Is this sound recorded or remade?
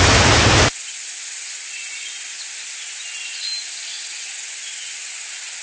recorded